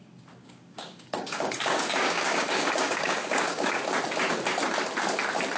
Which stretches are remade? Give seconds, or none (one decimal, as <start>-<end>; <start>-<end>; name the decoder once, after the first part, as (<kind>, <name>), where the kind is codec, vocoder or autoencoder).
0.4-3.8 (codec, DAC)